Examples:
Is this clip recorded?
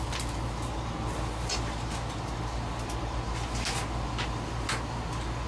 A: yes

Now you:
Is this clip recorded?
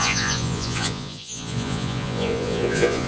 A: no